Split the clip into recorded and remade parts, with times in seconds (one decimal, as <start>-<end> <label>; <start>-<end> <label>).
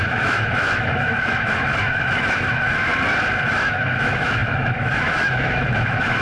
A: 0.0-2.9 remade; 2.9-3.5 recorded; 3.5-6.2 remade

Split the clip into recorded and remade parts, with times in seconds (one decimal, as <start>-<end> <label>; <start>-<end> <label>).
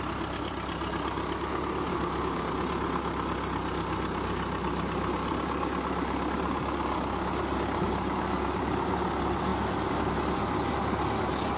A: 0.0-1.9 recorded; 1.9-2.5 remade; 2.5-11.6 recorded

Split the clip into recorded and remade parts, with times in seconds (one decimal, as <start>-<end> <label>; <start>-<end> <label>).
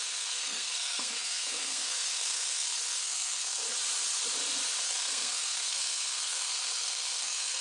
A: 0.0-3.6 remade; 3.6-4.8 recorded; 4.8-7.6 remade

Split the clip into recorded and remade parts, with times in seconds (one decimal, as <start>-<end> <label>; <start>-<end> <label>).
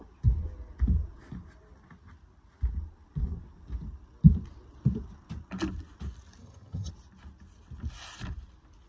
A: 0.0-6.4 recorded; 6.4-6.9 remade; 6.9-8.9 recorded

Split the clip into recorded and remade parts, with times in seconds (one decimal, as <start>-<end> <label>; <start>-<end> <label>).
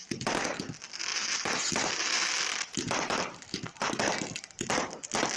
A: 0.0-1.1 recorded; 1.1-3.9 remade; 3.9-5.4 recorded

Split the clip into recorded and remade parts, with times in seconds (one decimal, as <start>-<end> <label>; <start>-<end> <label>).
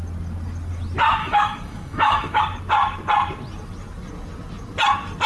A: 0.0-1.2 recorded; 1.2-2.4 remade; 2.4-5.3 recorded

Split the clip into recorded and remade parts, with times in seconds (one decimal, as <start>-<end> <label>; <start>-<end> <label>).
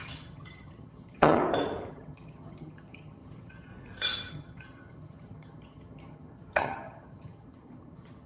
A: 0.0-1.4 remade; 1.4-1.9 recorded; 1.9-3.7 remade; 3.7-4.3 recorded; 4.3-8.3 remade